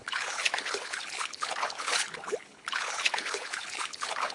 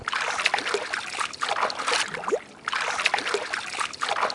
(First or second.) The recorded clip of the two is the second